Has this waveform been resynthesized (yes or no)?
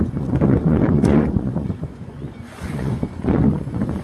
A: yes